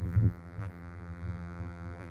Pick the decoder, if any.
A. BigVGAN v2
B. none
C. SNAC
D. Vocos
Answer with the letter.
A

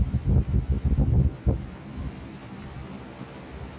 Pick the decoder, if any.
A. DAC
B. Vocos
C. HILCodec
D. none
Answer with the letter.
D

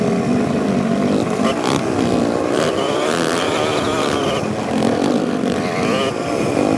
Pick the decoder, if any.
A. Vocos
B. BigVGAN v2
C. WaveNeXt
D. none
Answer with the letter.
D